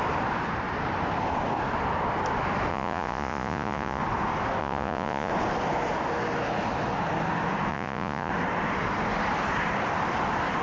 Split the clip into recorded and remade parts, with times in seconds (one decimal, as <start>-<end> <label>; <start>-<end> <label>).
0.0-2.7 recorded; 2.7-4.0 remade; 4.0-4.6 recorded; 4.6-5.3 remade; 5.3-7.7 recorded; 7.7-8.3 remade; 8.3-10.6 recorded